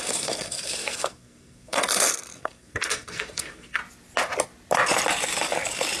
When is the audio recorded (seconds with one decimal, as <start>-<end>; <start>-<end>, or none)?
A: 3.8-6.0